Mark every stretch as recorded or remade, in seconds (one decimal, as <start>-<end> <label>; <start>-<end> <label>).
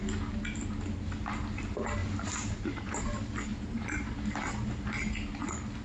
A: 0.0-2.0 recorded; 2.0-3.0 remade; 3.0-3.5 recorded; 3.5-4.1 remade; 4.1-5.8 recorded